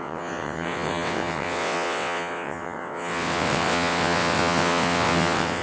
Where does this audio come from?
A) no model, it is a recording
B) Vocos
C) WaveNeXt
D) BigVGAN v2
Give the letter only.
C